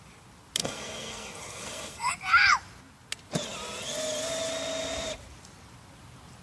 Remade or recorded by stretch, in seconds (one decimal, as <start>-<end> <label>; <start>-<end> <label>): 0.0-0.6 recorded; 0.6-2.1 remade; 2.1-6.4 recorded

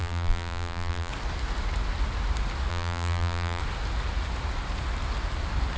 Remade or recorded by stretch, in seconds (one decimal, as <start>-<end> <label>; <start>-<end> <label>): 0.0-1.1 remade; 1.1-2.7 recorded; 2.7-3.6 remade; 3.6-5.8 recorded